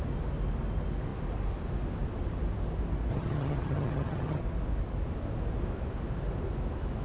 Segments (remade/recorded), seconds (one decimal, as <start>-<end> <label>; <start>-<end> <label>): 0.0-3.1 recorded; 3.1-4.4 remade; 4.4-7.0 recorded